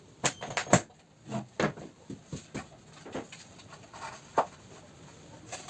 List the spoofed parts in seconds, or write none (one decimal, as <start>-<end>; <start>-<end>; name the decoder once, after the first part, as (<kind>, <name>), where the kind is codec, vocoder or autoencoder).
none